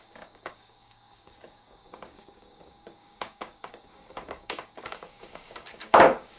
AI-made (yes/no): yes